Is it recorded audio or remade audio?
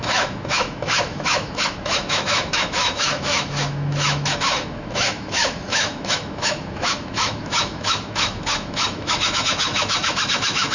remade